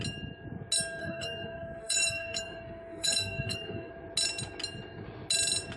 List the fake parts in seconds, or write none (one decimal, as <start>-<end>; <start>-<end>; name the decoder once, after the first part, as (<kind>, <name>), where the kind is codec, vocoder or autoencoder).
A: 1.0-3.9 (codec, SNAC)